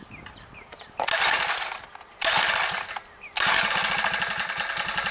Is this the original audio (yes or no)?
yes